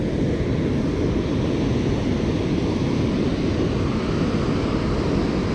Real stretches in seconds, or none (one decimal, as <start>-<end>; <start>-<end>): 0.0-5.5